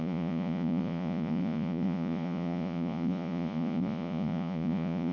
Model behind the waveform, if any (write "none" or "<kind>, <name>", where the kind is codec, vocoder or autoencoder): vocoder, Vocos